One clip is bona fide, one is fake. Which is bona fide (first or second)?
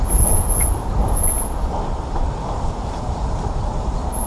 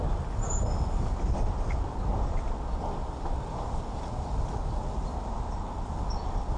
second